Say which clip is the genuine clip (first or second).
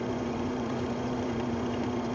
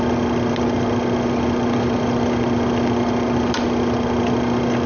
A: second